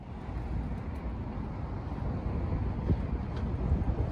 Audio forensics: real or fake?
real